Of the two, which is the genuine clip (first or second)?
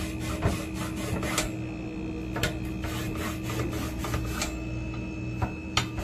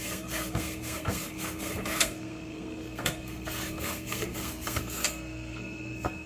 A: first